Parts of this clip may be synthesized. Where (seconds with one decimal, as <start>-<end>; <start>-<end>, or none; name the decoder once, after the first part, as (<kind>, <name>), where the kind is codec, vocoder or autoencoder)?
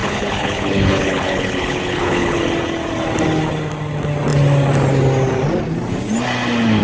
0.0-2.4 (codec, HILCodec)